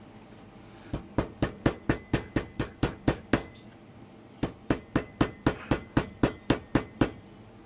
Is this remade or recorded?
recorded